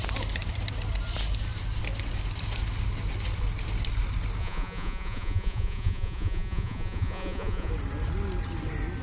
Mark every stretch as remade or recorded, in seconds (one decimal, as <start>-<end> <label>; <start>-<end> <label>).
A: 0.0-4.4 recorded; 4.4-7.7 remade; 7.7-9.0 recorded